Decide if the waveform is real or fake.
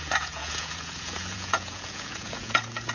fake